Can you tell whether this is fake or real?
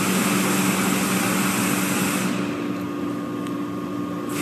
real